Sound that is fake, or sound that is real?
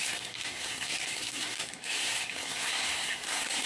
fake